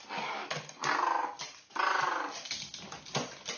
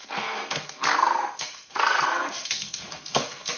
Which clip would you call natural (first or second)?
first